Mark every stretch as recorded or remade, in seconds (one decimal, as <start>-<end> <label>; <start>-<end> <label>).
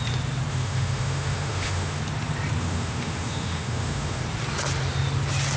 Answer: 0.0-0.5 recorded; 0.5-2.0 remade; 2.0-2.6 recorded; 2.6-4.2 remade; 4.2-5.6 recorded